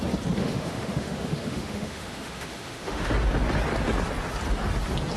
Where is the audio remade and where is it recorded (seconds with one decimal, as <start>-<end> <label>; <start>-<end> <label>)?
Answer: 0.0-0.4 recorded; 0.4-3.1 remade; 3.1-5.2 recorded